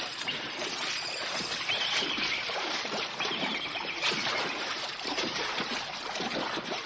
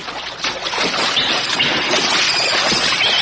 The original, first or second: second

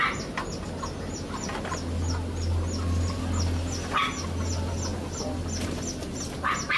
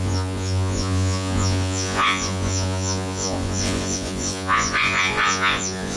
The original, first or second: first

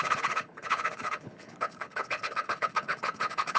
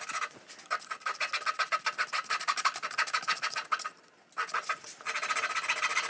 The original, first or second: second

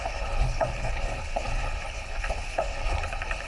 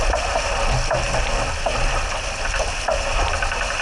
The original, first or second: second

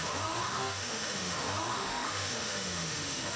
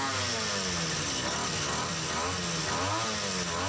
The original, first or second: second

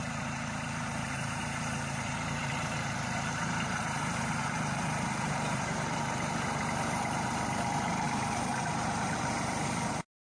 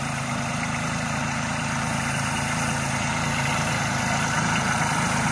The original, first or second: second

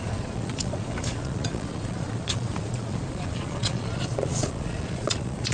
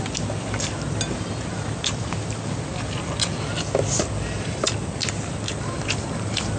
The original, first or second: second